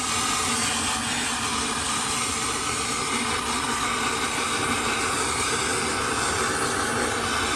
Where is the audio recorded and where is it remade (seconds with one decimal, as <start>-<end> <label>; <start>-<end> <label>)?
0.0-7.6 recorded